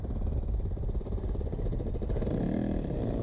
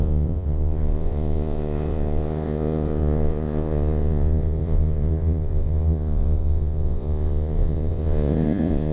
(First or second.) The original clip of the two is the first